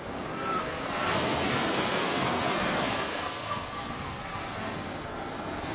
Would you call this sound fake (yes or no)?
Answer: yes